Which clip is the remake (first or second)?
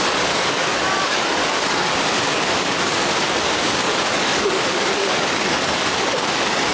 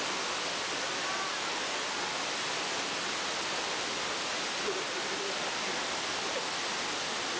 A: first